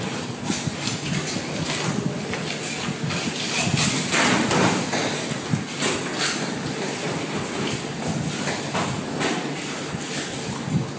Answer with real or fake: real